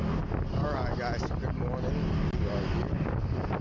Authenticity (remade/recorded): recorded